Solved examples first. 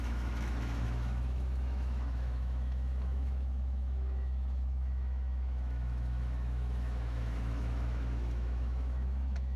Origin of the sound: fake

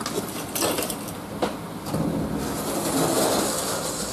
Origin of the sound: real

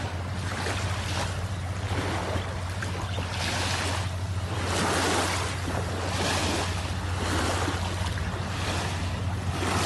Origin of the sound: real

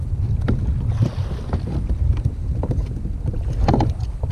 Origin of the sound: real